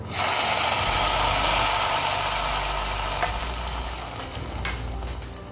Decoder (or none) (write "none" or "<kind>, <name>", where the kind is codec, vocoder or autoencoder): none